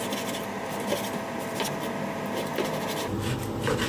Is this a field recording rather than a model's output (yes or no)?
yes